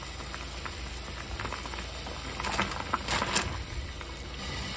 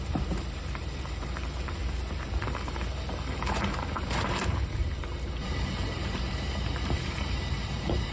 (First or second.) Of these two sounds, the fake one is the second